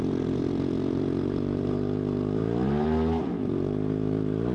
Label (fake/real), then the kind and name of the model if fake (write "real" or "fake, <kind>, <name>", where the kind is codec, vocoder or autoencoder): fake, vocoder, BigVGAN v2